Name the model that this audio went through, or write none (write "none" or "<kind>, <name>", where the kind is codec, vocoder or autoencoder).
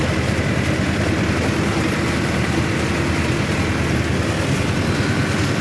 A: none